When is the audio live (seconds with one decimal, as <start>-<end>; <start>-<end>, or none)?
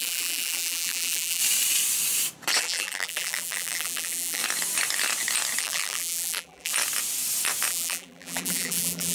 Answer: 1.4-2.6; 4.4-5.6; 6.7-7.7